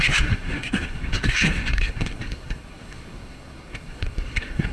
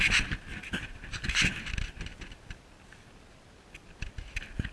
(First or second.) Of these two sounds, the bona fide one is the second